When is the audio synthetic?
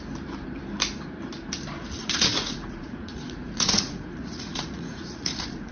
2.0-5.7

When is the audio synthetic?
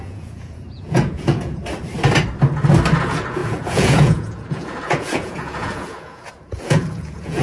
0.0-1.6; 3.0-7.4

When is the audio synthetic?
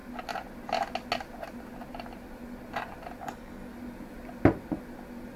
3.2-3.7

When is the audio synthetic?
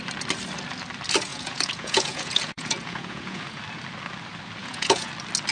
1.3-3.6; 4.6-5.1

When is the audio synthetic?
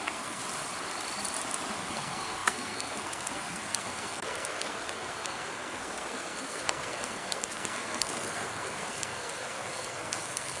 0.0-0.4; 1.8-10.6